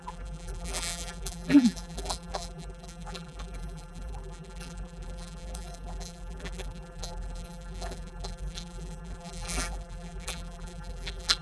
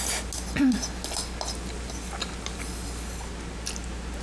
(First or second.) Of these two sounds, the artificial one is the first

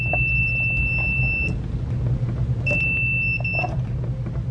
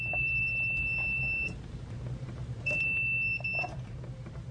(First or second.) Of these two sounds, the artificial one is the second